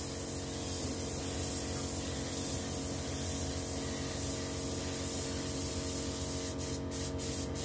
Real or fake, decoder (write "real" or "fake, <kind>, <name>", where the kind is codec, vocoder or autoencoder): real